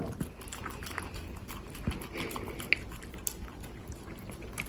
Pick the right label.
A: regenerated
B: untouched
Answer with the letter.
B